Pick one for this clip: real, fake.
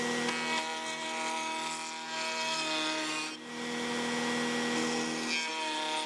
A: real